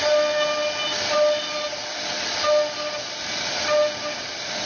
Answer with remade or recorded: recorded